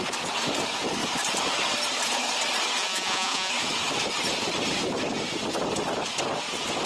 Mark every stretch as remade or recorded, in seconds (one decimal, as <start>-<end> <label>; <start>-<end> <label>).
0.0-2.8 recorded; 2.8-3.5 remade; 3.5-6.9 recorded